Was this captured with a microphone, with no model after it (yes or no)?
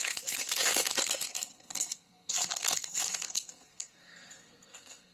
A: no